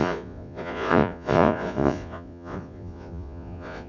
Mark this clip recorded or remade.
remade